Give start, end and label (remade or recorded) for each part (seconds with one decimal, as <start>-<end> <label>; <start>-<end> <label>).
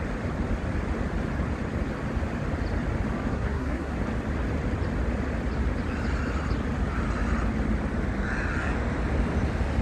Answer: 0.0-3.3 recorded; 3.3-3.9 remade; 3.9-9.8 recorded